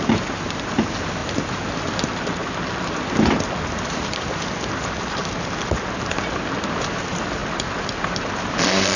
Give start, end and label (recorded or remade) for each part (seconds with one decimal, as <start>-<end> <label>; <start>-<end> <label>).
0.0-9.0 recorded